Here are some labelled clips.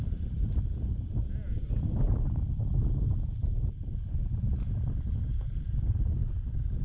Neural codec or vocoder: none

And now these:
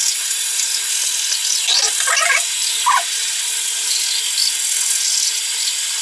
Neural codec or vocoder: none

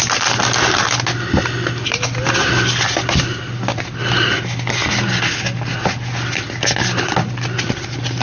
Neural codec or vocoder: none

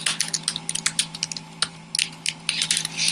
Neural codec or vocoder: none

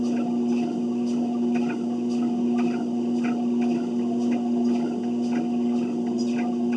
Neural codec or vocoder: none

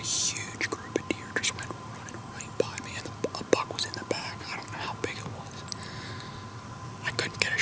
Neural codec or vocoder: none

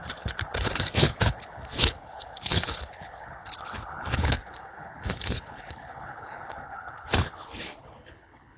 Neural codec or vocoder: codec, HILCodec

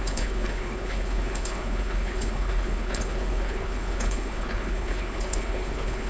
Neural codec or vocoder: codec, HILCodec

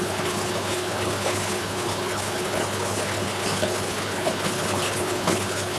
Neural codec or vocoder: codec, HILCodec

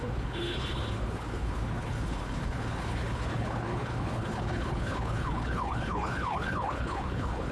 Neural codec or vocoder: codec, HILCodec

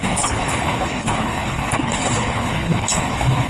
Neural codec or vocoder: codec, HILCodec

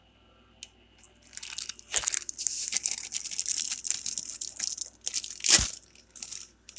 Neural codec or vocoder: none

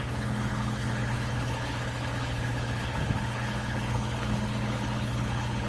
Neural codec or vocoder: codec, HILCodec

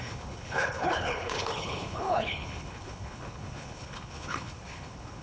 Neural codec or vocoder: codec, HILCodec